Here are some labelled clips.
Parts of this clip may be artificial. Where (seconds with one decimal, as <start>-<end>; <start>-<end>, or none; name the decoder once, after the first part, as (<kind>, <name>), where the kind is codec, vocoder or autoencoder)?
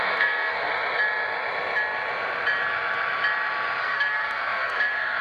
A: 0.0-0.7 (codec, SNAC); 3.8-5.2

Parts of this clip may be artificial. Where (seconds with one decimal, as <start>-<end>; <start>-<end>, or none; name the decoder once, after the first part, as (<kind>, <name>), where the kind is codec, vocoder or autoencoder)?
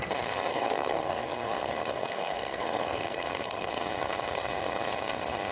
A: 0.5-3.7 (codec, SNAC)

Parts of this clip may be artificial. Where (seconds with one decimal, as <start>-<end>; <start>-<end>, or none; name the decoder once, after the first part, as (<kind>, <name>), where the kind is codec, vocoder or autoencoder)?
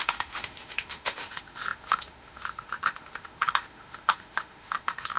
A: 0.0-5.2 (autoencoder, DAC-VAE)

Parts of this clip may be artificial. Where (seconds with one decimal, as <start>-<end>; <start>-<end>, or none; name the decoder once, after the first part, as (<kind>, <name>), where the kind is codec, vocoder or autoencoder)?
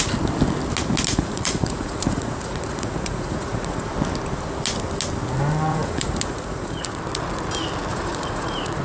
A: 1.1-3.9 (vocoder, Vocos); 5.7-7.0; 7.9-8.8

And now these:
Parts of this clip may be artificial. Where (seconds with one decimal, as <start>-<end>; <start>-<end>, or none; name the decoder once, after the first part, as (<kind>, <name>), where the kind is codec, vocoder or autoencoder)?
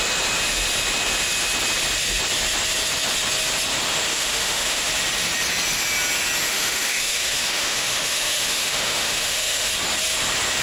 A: 4.1-4.9 (autoencoder, DAC-VAE); 6.5-9.7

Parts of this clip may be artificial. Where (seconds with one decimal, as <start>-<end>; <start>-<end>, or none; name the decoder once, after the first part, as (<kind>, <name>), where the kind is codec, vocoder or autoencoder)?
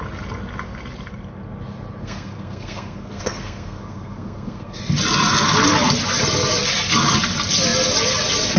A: 2.0-4.8 (codec, SNAC)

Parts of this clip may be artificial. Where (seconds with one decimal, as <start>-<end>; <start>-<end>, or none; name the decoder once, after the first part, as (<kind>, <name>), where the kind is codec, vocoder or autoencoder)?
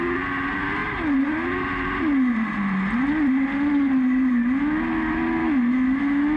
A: 5.4-6.4 (autoencoder, DAC-VAE)